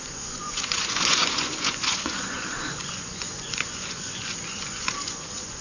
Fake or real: fake